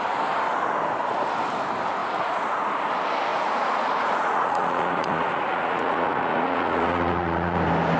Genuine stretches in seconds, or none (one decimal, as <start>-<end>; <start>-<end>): 0.0-2.0; 2.7-3.3; 7.6-8.0